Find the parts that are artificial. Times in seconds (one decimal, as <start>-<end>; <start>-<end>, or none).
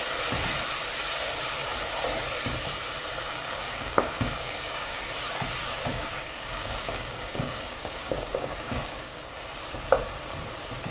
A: 3.3-5.0; 5.6-9.4